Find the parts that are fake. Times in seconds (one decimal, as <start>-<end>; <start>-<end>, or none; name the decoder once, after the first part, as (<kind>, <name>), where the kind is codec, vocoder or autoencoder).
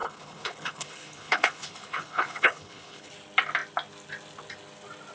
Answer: 0.0-3.1 (codec, HILCodec)